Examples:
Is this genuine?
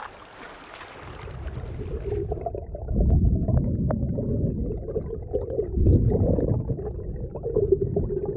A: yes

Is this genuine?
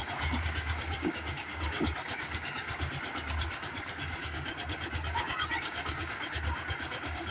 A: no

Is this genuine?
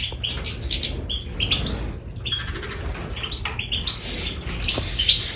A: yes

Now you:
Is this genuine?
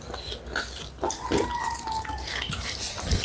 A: yes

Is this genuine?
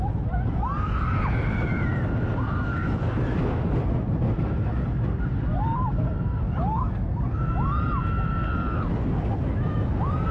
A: yes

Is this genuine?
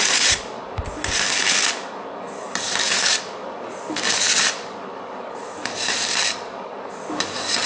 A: no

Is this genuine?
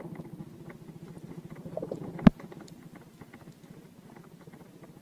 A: yes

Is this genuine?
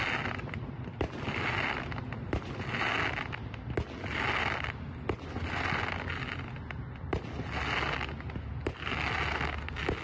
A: yes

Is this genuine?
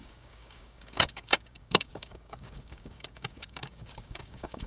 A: no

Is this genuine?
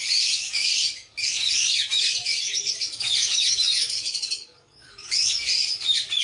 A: no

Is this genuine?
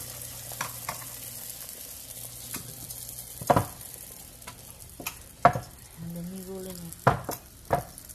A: yes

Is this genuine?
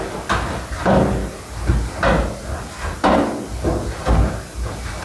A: yes